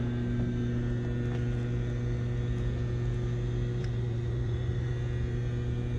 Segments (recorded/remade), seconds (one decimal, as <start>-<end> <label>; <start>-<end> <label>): 0.0-3.8 recorded; 3.8-4.9 remade; 4.9-6.0 recorded